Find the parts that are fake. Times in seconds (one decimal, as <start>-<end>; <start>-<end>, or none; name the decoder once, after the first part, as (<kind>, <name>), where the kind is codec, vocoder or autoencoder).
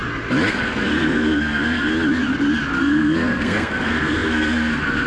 0.5-1.9 (codec, SNAC); 2.8-5.1